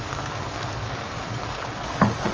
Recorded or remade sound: remade